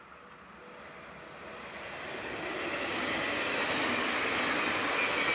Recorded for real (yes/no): yes